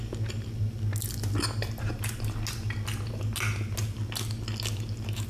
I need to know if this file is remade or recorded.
recorded